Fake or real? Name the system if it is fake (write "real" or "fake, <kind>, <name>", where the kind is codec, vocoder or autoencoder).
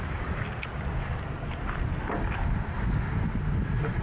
real